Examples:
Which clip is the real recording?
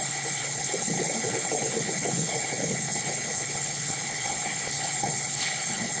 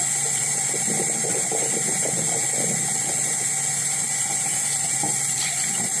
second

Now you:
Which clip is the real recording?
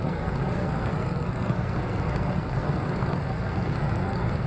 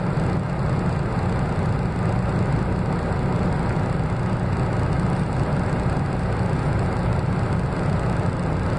second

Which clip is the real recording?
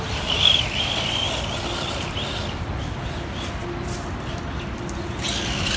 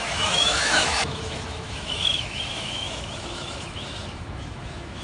first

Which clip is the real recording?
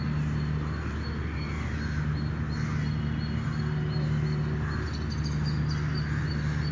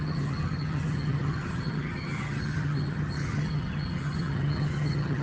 first